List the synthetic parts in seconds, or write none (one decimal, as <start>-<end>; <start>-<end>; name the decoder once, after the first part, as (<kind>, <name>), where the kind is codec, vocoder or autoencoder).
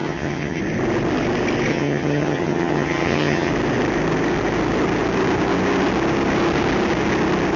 0.0-0.6 (vocoder, HiFi-GAN); 1.7-3.5